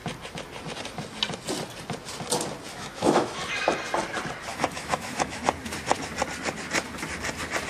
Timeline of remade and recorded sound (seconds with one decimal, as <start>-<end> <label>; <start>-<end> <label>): 0.0-2.7 recorded; 2.7-3.4 remade; 3.4-4.5 recorded; 4.5-5.5 remade; 5.5-7.7 recorded